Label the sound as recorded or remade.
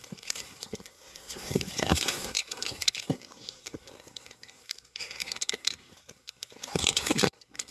remade